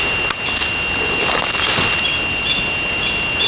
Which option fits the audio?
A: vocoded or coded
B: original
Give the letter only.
B